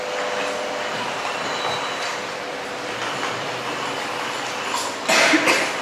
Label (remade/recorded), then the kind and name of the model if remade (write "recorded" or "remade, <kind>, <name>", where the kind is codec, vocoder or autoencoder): recorded